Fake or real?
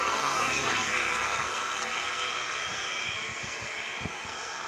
fake